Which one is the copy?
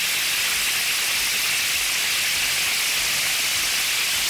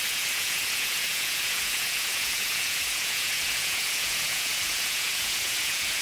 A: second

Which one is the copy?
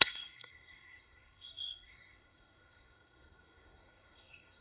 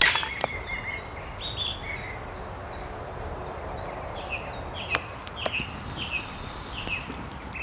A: first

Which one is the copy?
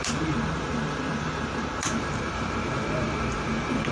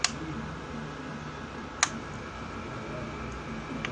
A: first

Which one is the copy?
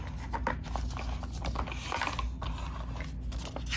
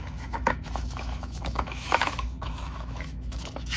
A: second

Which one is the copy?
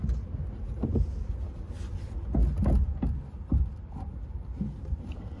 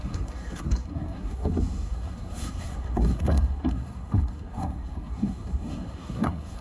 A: second